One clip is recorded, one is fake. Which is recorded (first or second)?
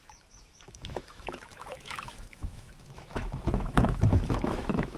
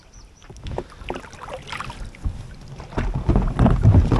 second